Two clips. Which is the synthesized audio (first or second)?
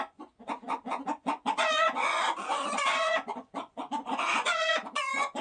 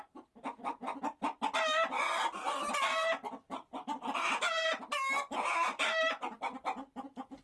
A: first